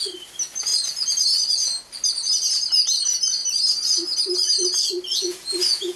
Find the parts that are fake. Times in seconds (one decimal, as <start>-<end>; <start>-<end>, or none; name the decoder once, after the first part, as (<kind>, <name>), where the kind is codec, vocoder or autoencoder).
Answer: 5.1-6.0 (vocoder, Vocos)